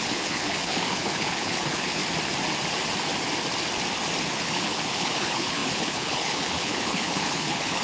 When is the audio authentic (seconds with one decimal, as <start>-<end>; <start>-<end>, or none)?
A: 2.0-4.3